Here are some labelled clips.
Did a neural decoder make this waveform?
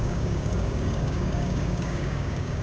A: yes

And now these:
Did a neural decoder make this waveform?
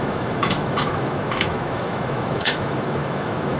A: yes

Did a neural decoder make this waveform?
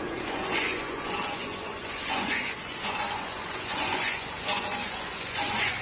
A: yes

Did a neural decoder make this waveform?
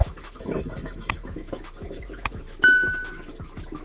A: yes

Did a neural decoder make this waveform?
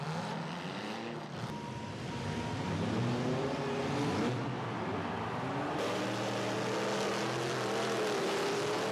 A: no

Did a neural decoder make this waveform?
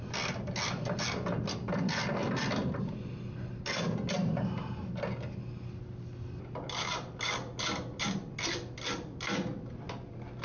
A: no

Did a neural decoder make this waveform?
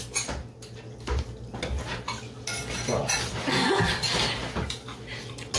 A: no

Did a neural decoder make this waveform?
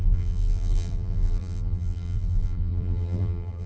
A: yes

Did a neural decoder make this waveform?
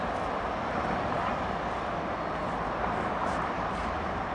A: no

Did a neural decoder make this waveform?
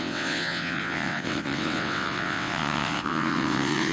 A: yes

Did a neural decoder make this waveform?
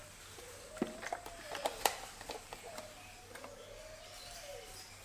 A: no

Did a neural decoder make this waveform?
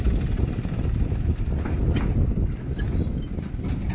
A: no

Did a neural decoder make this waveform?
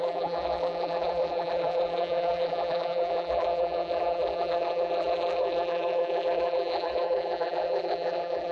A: yes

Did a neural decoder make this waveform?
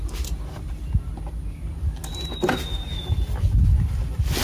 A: no